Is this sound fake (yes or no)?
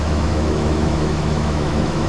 yes